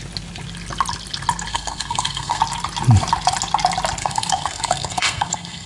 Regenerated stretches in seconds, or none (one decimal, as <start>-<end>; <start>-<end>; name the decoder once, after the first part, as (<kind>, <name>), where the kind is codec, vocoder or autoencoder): 1.5-2.4 (codec, SNAC); 4.0-5.7